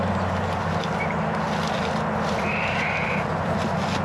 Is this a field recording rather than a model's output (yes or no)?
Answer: yes